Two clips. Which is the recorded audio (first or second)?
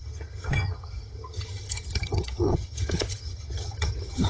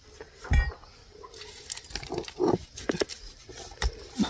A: second